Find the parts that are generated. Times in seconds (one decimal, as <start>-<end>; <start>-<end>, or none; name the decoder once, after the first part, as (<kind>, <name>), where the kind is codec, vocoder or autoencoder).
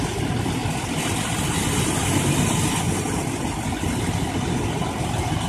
none